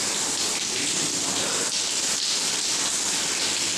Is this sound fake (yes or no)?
no